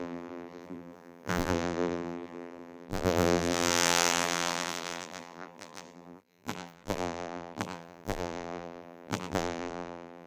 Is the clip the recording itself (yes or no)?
no